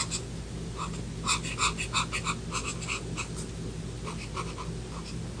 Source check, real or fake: real